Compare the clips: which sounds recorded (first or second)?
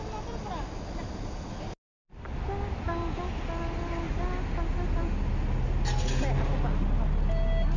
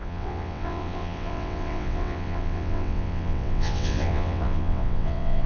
first